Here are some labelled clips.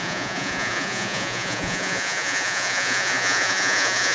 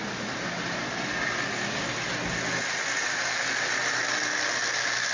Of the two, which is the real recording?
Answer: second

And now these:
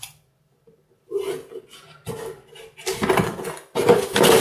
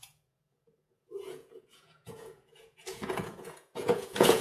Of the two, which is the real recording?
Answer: first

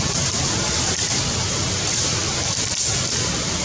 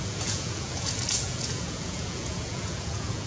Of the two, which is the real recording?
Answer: first